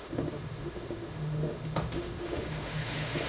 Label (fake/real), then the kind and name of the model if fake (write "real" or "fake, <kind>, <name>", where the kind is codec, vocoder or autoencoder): fake, autoencoder, DAC-VAE